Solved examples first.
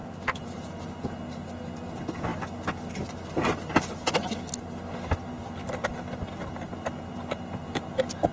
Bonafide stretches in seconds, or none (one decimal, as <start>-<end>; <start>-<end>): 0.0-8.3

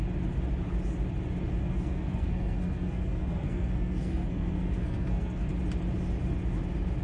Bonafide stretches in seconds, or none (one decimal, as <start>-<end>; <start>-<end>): 0.0-1.6; 5.5-7.0

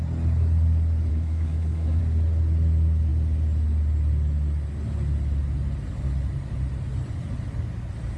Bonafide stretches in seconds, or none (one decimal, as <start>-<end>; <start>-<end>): 0.0-1.1; 2.0-8.2

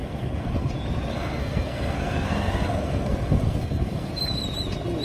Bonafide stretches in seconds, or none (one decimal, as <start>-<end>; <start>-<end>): 0.7-1.1; 4.1-5.0